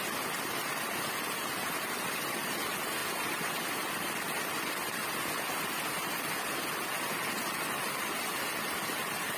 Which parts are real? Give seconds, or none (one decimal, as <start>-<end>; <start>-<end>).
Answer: 0.0-9.4